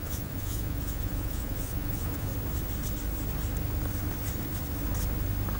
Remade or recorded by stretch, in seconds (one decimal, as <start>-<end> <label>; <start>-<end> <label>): 0.0-2.3 remade; 2.3-5.6 recorded